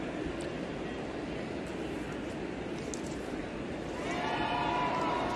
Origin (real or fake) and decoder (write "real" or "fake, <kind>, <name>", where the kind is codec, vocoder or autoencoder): real